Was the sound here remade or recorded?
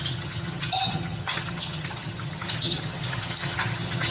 remade